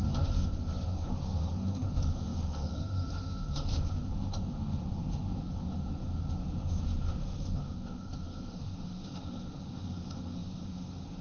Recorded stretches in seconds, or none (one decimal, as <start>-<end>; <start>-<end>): none